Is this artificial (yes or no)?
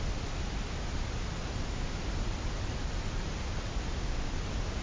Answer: no